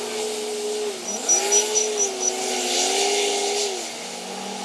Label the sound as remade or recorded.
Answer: recorded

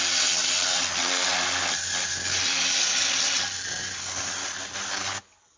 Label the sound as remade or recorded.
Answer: recorded